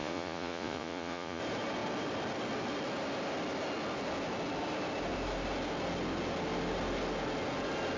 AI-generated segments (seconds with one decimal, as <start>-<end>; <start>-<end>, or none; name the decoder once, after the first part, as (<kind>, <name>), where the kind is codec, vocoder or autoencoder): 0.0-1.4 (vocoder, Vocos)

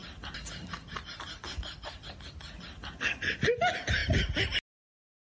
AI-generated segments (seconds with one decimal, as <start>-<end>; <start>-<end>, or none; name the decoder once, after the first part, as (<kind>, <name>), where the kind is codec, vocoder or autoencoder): none

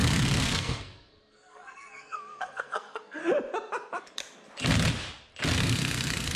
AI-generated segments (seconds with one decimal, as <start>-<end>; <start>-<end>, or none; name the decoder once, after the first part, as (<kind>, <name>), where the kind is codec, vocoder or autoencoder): 0.0-3.2 (codec, SNAC); 5.5-6.4